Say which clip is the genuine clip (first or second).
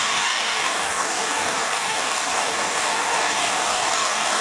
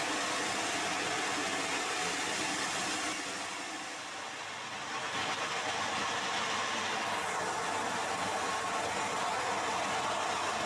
second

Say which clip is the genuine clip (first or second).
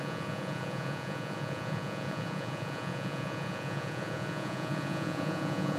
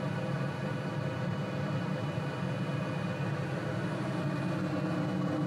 second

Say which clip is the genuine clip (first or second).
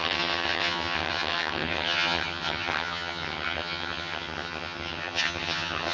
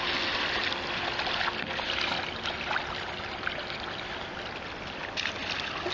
second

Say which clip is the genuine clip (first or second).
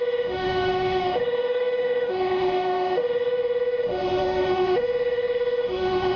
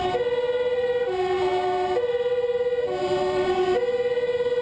second